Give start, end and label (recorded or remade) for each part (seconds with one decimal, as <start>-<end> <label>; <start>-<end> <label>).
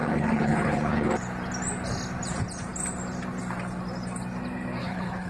0.0-1.1 remade; 1.1-4.8 recorded; 4.8-5.3 remade